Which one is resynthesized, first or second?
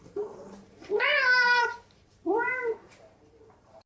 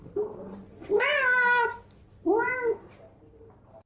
first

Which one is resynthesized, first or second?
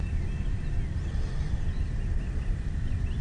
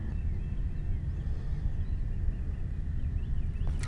first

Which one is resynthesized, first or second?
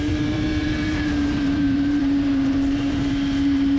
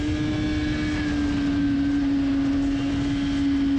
first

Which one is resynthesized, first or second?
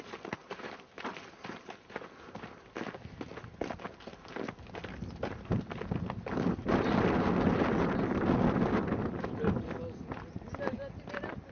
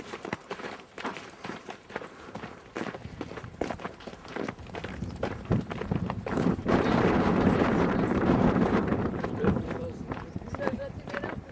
second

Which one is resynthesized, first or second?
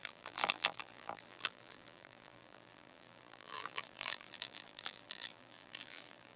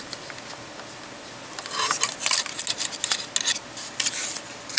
first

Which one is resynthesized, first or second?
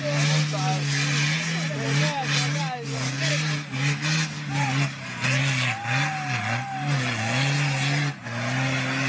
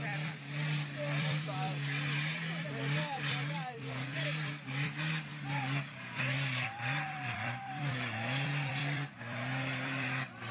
second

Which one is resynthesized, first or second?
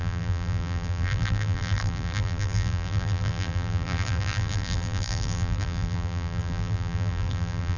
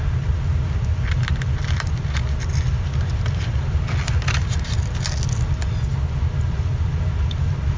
first